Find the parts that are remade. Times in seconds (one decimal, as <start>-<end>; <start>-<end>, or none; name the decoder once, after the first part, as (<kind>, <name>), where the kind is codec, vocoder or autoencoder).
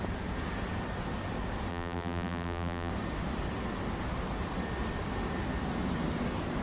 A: 1.7-2.9 (vocoder, BigVGAN v2)